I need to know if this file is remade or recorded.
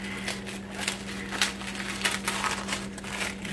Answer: recorded